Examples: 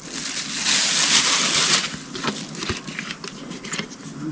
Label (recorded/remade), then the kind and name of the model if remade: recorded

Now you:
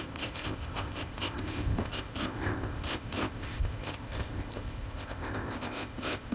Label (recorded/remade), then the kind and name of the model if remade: remade, codec, ZipCodec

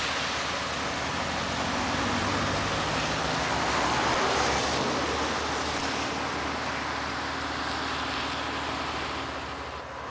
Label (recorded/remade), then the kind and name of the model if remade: recorded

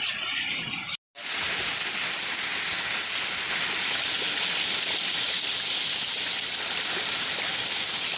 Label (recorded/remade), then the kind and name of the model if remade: recorded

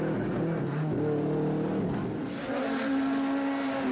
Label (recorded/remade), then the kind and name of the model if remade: recorded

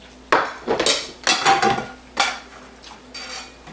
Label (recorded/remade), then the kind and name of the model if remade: recorded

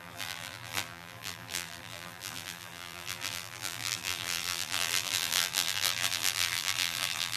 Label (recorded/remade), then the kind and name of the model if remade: remade, vocoder, BigVGAN v2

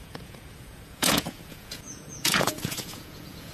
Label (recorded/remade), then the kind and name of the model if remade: remade, vocoder, Vocos